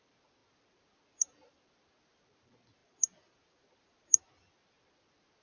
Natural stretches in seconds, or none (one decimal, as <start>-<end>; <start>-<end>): 0.0-5.4